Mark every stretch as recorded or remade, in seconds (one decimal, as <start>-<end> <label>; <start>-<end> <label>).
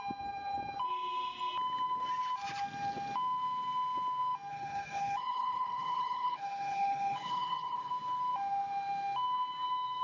0.0-4.5 recorded; 4.5-7.9 remade; 7.9-10.0 recorded